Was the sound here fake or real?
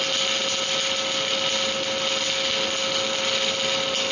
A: real